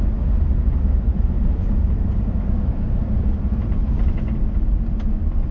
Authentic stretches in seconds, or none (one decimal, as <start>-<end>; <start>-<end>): 0.0-1.1; 4.4-5.5